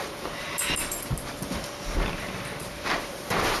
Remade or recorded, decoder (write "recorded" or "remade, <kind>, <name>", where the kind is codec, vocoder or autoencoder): remade, vocoder, BigVGAN v2